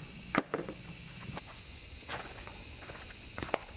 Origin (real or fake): fake